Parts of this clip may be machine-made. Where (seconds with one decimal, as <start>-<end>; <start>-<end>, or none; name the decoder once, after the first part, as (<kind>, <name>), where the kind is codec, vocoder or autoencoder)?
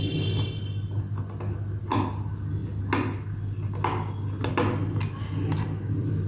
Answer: none